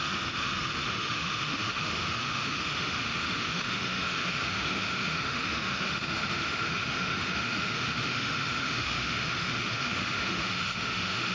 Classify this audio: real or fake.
fake